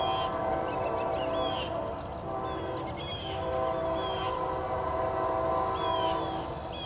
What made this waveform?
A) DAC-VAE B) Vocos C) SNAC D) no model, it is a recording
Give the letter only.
D